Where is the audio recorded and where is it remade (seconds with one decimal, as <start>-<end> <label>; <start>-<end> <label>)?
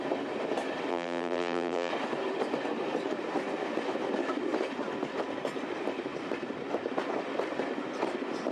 0.0-0.9 recorded; 0.9-1.9 remade; 1.9-8.5 recorded